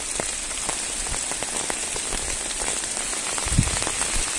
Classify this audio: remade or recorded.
recorded